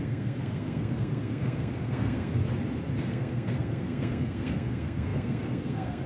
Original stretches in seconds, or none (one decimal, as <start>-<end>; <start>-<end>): 2.4-3.0